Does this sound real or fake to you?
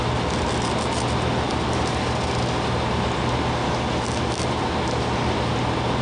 real